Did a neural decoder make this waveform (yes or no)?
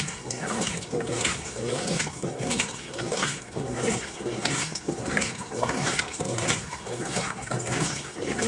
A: yes